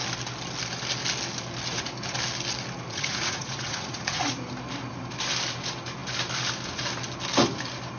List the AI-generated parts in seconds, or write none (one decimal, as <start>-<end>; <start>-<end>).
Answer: 2.9-4.3